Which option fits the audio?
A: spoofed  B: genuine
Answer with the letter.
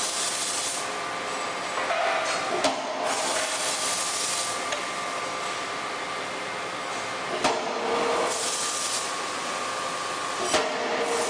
B